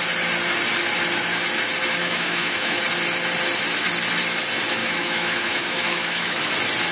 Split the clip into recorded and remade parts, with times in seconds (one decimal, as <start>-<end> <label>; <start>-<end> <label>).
0.0-2.0 recorded; 2.0-2.8 remade; 2.8-4.8 recorded; 4.8-6.4 remade; 6.4-6.9 recorded